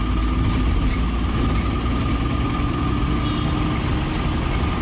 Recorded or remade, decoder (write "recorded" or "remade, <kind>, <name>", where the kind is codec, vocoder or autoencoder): recorded